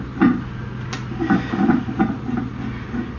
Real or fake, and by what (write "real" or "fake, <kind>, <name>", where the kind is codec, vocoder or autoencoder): real